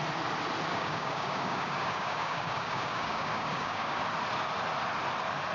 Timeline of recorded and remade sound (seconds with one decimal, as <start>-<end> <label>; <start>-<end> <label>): 0.0-0.7 recorded; 0.7-4.0 remade; 4.0-5.5 recorded